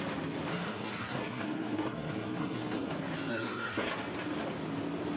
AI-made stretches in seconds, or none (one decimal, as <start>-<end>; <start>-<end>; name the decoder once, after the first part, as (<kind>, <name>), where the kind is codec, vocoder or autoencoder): 0.5-2.9 (codec, SNAC); 3.3-3.9